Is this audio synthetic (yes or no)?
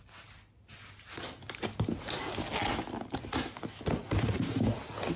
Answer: no